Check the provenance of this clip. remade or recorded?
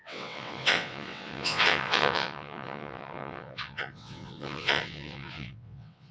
remade